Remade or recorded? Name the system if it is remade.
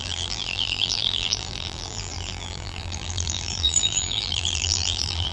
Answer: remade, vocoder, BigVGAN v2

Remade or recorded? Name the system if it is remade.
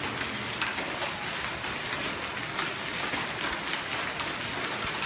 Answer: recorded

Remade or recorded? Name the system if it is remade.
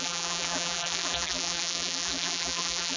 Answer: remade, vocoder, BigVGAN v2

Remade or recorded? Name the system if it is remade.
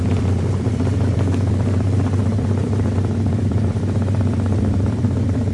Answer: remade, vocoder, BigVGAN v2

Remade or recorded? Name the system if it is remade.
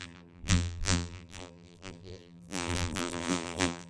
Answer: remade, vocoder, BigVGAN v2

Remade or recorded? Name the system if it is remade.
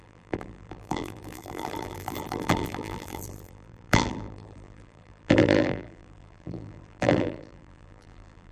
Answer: remade, vocoder, BigVGAN v2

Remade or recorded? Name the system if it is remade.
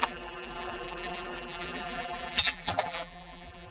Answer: remade, vocoder, BigVGAN v2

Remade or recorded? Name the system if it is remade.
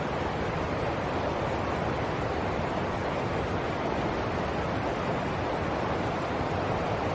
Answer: remade, vocoder, BigVGAN v2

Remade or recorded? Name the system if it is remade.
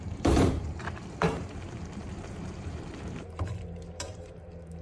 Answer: remade, vocoder, BigVGAN v2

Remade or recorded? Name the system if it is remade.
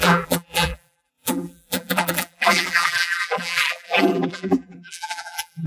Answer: remade, vocoder, BigVGAN v2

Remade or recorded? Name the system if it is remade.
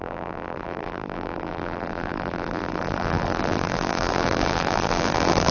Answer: remade, vocoder, BigVGAN v2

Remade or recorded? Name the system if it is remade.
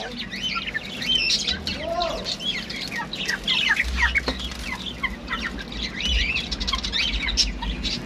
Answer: recorded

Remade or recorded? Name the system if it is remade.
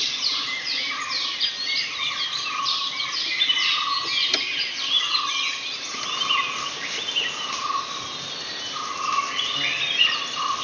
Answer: recorded